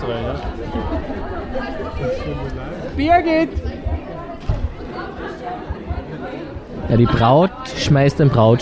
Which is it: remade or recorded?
recorded